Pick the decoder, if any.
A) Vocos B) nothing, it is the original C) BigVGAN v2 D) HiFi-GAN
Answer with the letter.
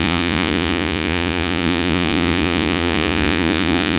A